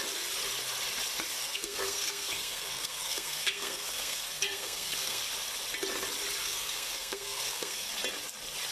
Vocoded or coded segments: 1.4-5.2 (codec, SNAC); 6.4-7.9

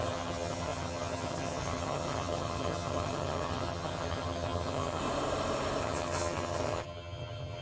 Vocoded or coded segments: 0.0-5.0 (vocoder, HiFi-GAN); 5.8-7.6

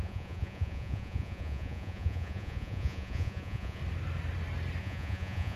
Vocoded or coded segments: 0.0-3.8 (vocoder, Vocos); 4.8-5.6

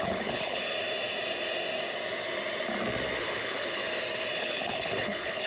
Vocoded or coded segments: 0.0-0.6 (codec, HILCodec); 3.2-3.8; 4.4-5.5

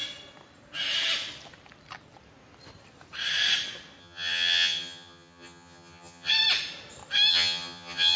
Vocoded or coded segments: 4.0-6.3 (vocoder, HiFi-GAN); 7.3-8.2

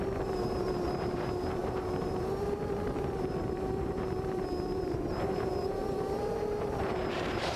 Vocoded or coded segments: 0.0-7.6 (vocoder, BigVGAN v2)

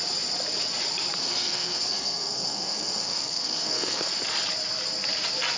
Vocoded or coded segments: 1.2-4.1 (codec, SNAC)

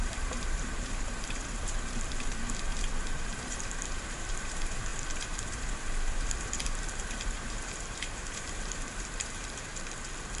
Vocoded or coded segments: 0.0-9.7 (vocoder, BigVGAN v2)